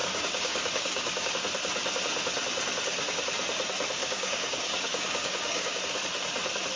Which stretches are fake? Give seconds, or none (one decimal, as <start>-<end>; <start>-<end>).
0.0-1.3; 4.0-5.8